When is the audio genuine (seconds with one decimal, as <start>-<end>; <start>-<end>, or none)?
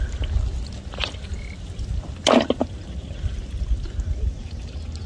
0.0-5.1